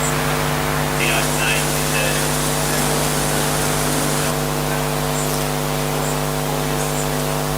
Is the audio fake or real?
real